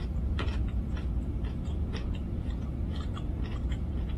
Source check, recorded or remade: recorded